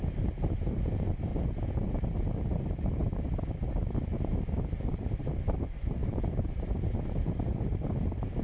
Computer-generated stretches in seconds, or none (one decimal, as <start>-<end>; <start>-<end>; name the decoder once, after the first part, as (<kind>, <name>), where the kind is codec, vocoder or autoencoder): 0.0-1.3 (vocoder, BigVGAN v2); 2.6-8.4